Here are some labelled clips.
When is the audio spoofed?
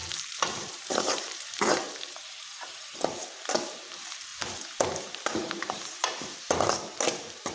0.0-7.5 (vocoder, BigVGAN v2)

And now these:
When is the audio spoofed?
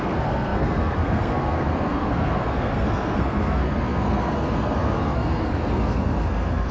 0.0-6.7 (codec, SNAC)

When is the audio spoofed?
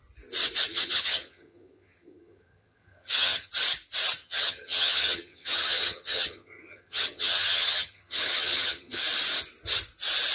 0.7-3.5 (vocoder, HiFi-GAN); 4.2-9.0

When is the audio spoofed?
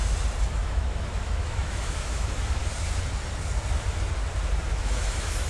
0.5-2.6 (autoencoder, DAC-VAE); 4.7-5.5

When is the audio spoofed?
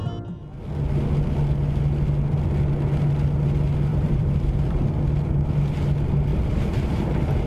3.9-4.8 (vocoder, BigVGAN v2); 6.3-7.5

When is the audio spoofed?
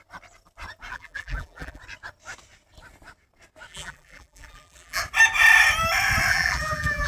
0.9-1.8 (vocoder, BigVGAN v2); 3.7-5.0; 6.3-7.1